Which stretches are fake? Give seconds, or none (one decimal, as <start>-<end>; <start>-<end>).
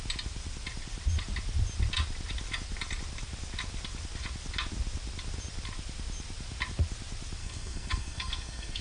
7.4-8.8